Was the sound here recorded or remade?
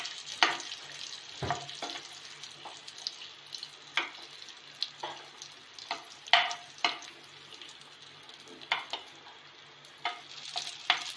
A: recorded